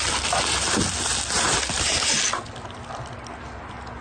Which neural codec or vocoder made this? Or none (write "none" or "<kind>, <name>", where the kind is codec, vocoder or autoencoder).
none